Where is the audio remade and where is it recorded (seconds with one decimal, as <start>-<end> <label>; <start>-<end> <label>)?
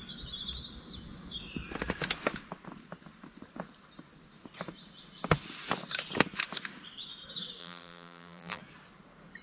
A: 0.0-7.6 recorded; 7.6-8.6 remade; 8.6-9.4 recorded